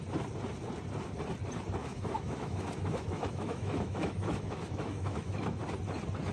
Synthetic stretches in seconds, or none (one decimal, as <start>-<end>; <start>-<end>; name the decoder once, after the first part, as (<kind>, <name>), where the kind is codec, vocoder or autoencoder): 1.8-5.6 (autoencoder, DAC-VAE)